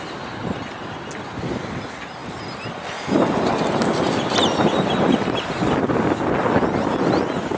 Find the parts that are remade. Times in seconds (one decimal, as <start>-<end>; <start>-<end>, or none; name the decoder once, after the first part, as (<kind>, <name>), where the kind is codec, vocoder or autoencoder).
none